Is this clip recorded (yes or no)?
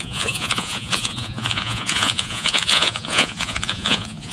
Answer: no